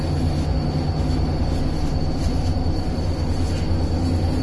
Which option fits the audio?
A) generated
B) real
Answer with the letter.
B